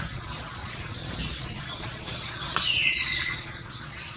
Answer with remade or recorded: remade